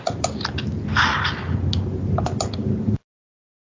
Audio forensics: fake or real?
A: real